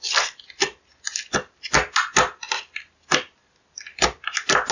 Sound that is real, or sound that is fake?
real